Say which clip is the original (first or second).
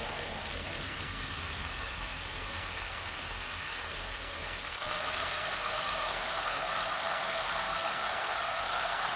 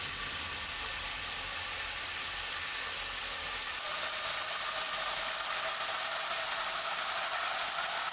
second